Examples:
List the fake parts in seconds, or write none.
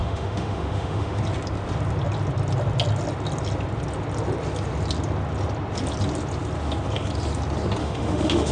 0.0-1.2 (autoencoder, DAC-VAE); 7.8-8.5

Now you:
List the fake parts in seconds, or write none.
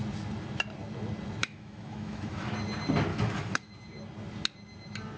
1.4-2.5 (autoencoder, DAC-VAE); 3.1-3.7